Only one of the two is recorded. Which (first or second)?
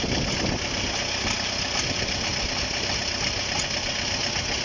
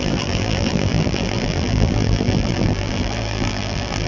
first